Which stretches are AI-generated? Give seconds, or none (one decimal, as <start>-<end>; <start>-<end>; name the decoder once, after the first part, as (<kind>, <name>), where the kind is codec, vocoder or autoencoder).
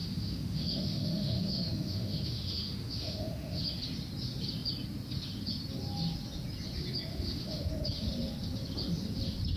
0.0-3.6 (autoencoder, DAC-VAE); 7.1-7.7